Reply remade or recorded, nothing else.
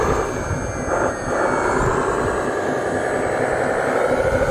recorded